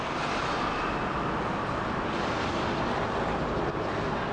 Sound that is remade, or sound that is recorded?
recorded